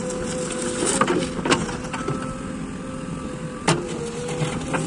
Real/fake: real